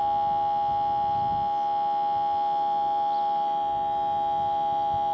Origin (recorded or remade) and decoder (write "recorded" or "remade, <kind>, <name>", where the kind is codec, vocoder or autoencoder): recorded